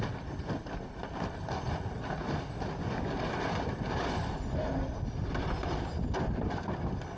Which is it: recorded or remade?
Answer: recorded